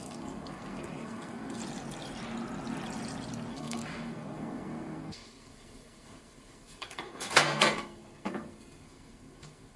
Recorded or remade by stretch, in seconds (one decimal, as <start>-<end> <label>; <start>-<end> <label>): 0.0-1.6 remade; 1.6-3.5 recorded; 3.5-9.8 remade

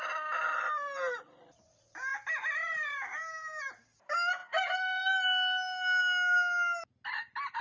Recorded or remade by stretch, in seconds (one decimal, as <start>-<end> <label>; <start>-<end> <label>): 0.0-7.6 recorded